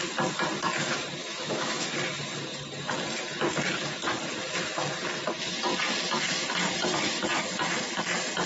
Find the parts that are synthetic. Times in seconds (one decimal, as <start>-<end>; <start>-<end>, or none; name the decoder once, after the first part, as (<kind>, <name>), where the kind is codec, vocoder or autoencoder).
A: 1.2-1.9 (autoencoder, DAC-VAE)